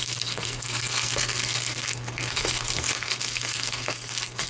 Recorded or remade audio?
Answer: remade